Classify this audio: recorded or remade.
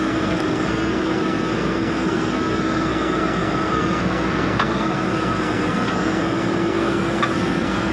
remade